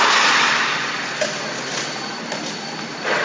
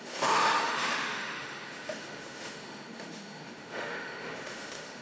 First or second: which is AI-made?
second